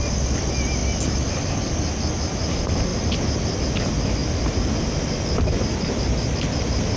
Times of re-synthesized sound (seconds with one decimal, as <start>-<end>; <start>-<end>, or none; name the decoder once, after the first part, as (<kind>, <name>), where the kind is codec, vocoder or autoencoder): none